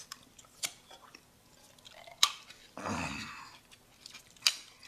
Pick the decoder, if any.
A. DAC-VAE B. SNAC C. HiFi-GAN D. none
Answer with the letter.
D